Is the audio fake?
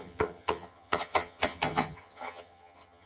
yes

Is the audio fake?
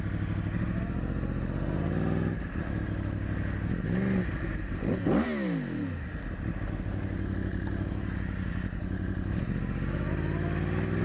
no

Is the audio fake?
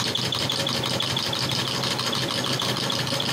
no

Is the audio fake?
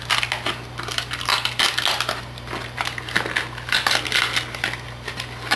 no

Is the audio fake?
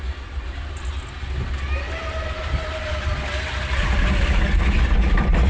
no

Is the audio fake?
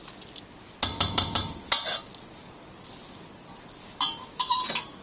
no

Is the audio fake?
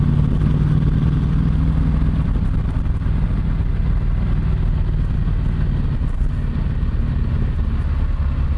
no